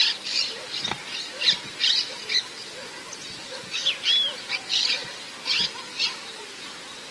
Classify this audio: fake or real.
real